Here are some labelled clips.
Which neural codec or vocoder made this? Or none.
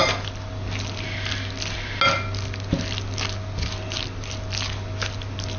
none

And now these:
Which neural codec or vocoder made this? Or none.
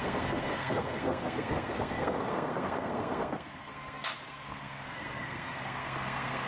codec, SNAC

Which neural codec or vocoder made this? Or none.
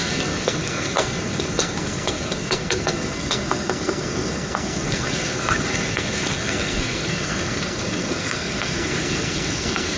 codec, SNAC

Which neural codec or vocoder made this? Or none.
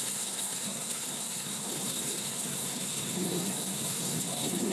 codec, SNAC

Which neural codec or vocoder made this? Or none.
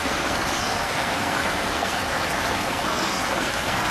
codec, SNAC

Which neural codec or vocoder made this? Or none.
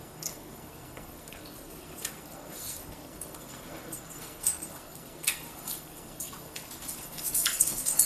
codec, SNAC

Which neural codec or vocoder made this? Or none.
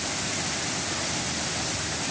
none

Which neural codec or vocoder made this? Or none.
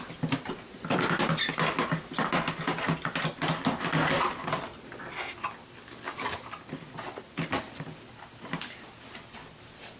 none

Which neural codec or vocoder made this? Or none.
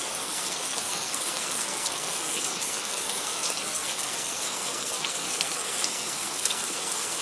codec, SNAC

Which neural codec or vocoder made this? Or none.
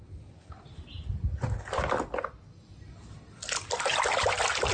none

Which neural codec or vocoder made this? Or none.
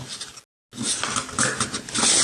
none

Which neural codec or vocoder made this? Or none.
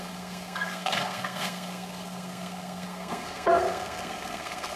codec, SNAC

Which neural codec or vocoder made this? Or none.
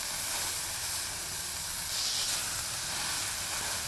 none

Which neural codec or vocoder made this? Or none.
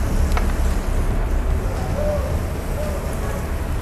none